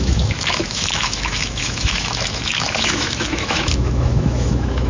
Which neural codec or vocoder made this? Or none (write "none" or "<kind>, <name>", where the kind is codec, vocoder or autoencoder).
autoencoder, DAC-VAE